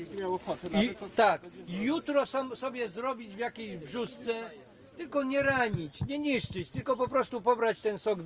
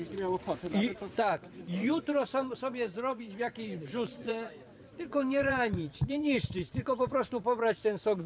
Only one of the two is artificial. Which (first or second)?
second